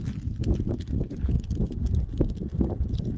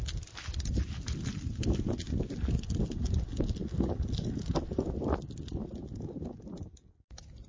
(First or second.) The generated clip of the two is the first